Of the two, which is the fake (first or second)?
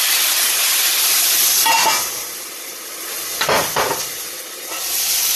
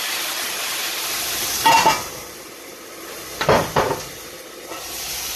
second